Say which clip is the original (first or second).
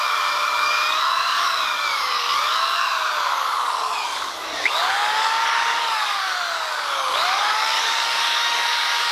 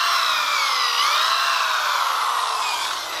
second